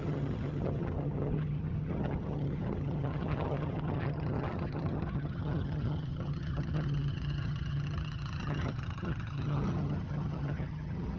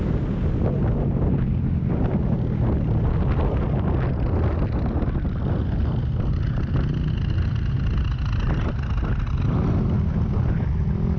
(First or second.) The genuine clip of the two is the second